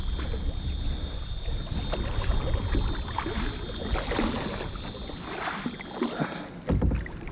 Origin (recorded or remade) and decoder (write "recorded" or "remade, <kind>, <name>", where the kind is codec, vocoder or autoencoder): recorded